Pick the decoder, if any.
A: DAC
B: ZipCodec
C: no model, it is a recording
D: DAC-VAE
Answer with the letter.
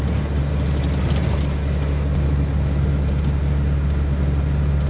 C